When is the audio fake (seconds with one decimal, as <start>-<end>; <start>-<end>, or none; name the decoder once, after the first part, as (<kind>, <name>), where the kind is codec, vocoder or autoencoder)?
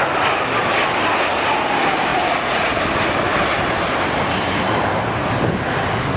2.1-2.8 (vocoder, Vocos)